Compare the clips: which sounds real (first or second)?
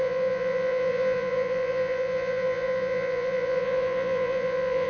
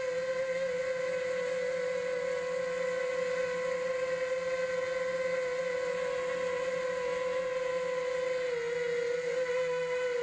second